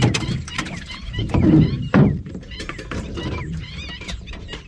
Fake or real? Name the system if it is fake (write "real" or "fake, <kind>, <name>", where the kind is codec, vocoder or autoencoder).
fake, vocoder, BigVGAN v2